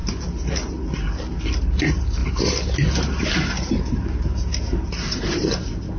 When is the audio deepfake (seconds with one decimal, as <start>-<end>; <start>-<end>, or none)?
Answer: none